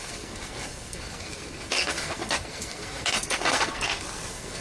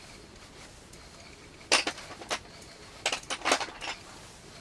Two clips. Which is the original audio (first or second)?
second